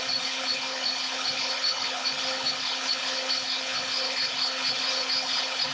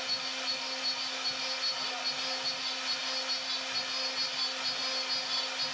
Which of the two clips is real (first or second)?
second